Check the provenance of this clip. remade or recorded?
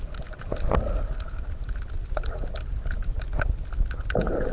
recorded